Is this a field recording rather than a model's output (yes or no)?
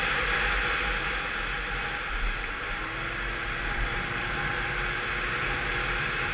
yes